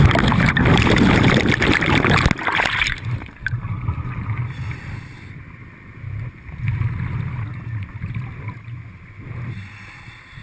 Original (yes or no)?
yes